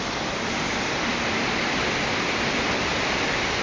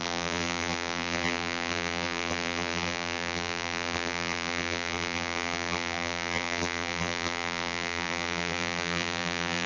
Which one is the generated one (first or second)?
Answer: second